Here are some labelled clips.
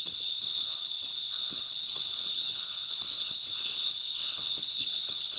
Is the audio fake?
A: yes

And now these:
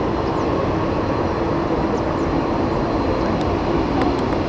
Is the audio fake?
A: no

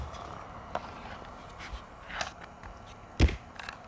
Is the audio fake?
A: no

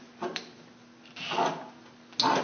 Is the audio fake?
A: no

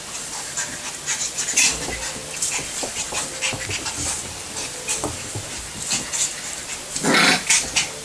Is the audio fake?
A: no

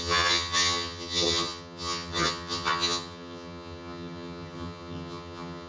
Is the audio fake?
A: yes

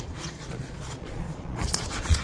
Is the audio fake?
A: yes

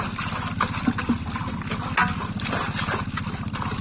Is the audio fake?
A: no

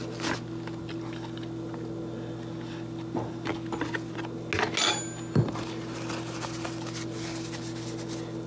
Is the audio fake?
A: no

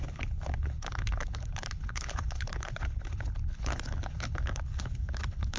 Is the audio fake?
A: yes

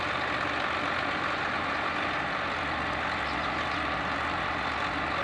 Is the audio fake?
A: no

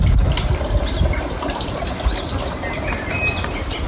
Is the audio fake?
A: no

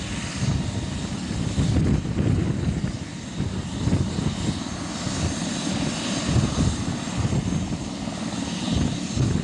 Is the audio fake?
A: no